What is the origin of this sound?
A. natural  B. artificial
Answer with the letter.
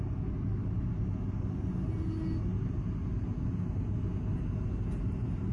A